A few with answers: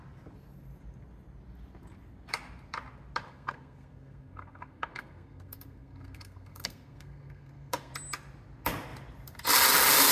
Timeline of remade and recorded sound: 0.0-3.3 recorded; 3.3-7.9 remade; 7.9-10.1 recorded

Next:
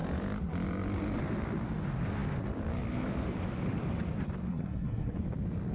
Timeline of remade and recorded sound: 0.0-4.5 recorded; 4.5-5.2 remade; 5.2-5.7 recorded

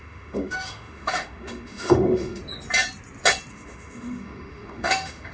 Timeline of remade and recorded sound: 0.0-2.4 remade; 2.4-3.5 recorded; 3.5-5.3 remade

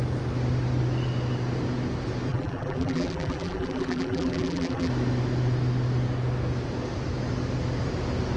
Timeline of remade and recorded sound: 0.0-2.3 recorded; 2.3-4.9 remade; 4.9-8.4 recorded